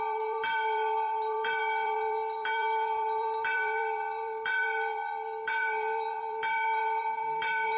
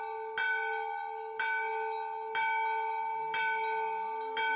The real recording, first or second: second